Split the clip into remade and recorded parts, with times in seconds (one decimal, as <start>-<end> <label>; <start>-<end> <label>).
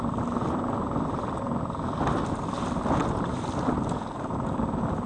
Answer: 0.0-5.1 recorded